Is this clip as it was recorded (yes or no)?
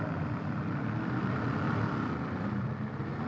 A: yes